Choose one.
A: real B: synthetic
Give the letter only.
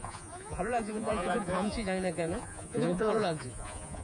B